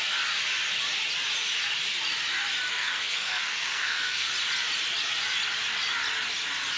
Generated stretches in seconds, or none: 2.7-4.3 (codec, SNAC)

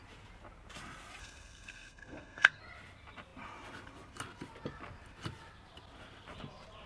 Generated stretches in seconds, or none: 1.2-2.6 (codec, SNAC)

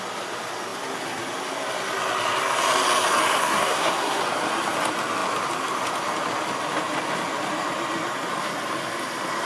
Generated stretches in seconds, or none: 3.4-4.2 (codec, SNAC)

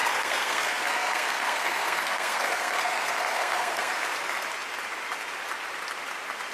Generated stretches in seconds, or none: 0.0-3.9 (codec, SNAC)

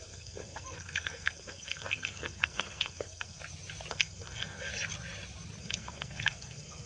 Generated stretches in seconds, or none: 0.0-3.4 (codec, SNAC); 3.9-4.7; 5.6-6.9